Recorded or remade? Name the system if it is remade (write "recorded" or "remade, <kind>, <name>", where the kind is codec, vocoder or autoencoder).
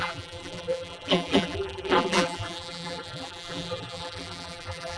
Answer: remade, vocoder, BigVGAN v2